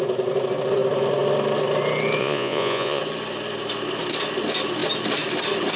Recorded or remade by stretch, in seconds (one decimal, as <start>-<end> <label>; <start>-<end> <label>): 0.0-2.2 recorded; 2.2-3.0 remade; 3.0-5.8 recorded